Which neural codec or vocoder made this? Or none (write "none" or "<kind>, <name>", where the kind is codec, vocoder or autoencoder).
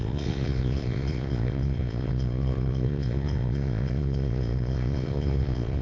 vocoder, Vocos